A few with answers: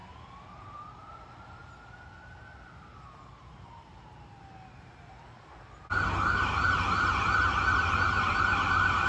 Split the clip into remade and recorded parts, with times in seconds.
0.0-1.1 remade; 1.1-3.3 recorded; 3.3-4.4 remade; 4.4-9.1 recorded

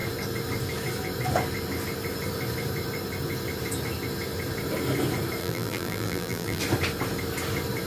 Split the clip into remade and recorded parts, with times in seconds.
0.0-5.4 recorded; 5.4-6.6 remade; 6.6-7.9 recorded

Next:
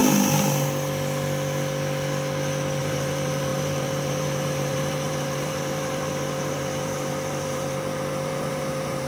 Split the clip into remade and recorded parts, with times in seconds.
0.0-2.8 recorded; 2.8-9.1 remade

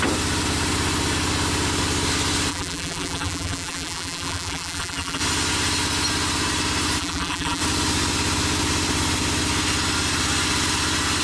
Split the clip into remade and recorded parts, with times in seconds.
0.0-2.5 recorded; 2.5-5.2 remade; 5.2-7.0 recorded; 7.0-7.6 remade; 7.6-11.2 recorded

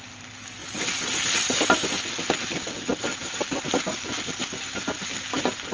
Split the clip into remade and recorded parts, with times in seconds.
0.0-5.7 recorded